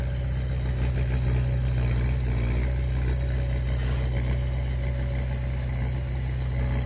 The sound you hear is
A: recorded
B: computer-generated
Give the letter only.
A